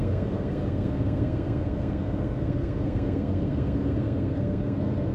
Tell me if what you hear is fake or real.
fake